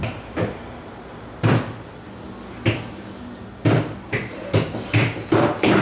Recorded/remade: recorded